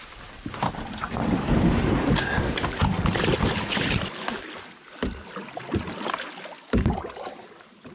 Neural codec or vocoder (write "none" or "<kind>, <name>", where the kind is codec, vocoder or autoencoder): none